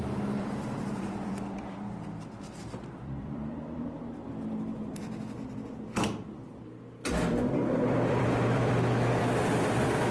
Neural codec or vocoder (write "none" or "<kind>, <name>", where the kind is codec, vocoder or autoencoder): vocoder, BigVGAN v2